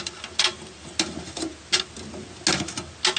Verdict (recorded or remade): recorded